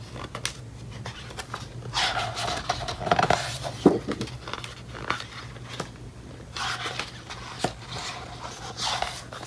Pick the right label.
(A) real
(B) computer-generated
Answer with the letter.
A